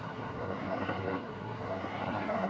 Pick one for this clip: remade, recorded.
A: remade